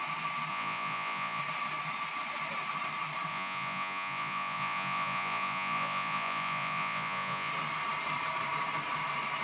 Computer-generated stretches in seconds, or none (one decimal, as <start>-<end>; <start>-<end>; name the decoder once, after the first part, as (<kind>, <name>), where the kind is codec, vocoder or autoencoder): 0.5-1.4 (vocoder, Vocos); 3.3-7.5